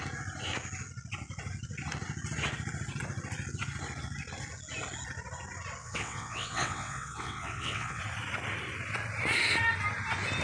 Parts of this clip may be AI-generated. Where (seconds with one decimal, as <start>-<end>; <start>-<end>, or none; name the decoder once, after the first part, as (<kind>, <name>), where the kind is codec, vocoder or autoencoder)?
5.8-8.0 (vocoder, WaveNeXt)